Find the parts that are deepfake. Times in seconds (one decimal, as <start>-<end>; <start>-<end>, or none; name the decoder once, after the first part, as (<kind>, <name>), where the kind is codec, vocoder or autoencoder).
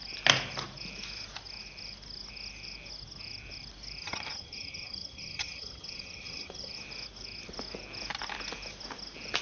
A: 4.0-6.8 (vocoder, HiFi-GAN)